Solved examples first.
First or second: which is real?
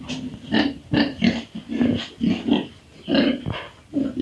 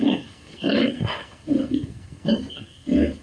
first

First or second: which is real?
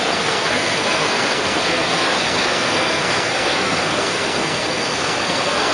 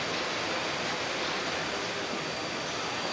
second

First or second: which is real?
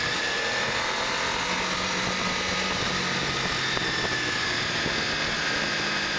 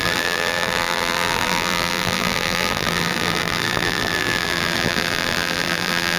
first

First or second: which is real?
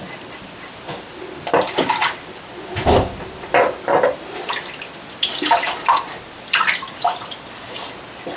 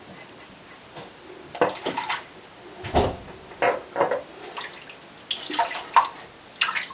second